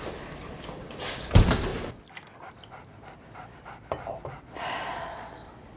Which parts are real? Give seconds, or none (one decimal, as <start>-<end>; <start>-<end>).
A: 1.7-2.5